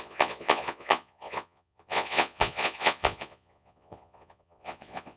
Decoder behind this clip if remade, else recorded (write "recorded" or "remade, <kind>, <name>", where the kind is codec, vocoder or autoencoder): remade, vocoder, Vocos